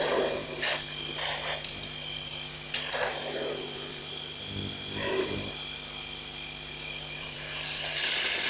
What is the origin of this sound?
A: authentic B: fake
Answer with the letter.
B